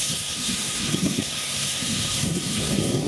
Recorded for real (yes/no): no